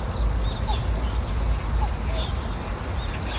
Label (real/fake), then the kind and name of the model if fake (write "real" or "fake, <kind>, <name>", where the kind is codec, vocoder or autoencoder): real